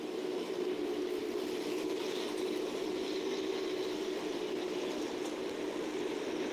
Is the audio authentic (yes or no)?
yes